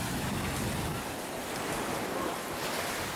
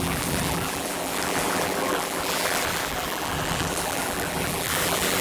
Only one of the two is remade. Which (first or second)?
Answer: second